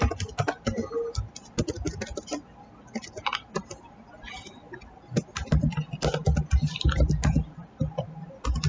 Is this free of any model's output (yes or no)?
yes